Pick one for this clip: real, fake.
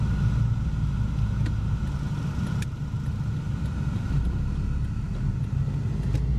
real